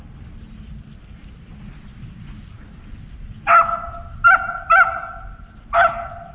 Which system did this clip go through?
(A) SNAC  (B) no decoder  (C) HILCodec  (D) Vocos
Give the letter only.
B